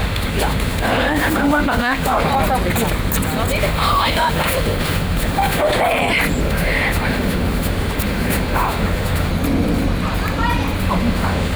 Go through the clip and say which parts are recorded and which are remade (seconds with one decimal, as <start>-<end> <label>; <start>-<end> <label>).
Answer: 0.0-2.3 remade; 2.3-3.6 recorded; 3.6-5.8 remade; 5.8-6.4 recorded; 6.4-9.3 remade; 9.3-10.8 recorded; 10.8-11.6 remade